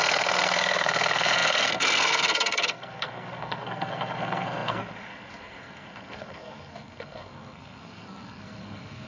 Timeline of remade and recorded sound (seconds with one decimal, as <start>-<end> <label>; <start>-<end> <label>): 0.0-9.1 remade